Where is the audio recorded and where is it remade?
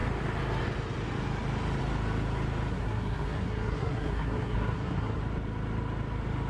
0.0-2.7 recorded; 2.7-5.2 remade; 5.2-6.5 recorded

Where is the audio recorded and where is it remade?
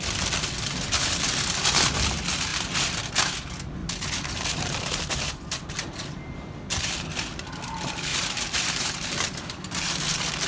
0.0-3.8 recorded; 3.8-5.3 remade; 5.3-8.1 recorded; 8.1-9.9 remade; 9.9-10.5 recorded